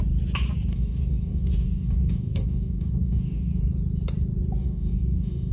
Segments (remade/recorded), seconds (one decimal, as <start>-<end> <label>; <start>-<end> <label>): 0.0-0.7 recorded; 0.7-3.6 remade; 3.6-4.6 recorded; 4.6-5.5 remade